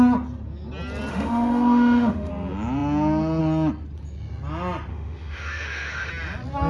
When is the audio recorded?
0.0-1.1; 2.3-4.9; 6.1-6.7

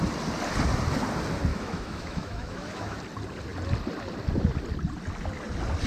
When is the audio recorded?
0.0-1.5; 3.0-5.9

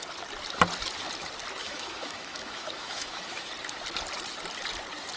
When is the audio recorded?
0.0-1.6; 3.5-5.2